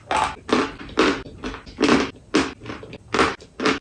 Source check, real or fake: real